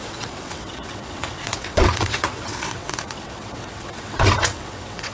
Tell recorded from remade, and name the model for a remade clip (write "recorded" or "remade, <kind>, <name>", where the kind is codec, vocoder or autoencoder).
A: remade, vocoder, WaveNeXt